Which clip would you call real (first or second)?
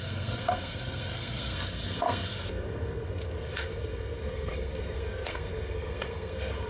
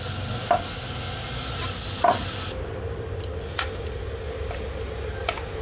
second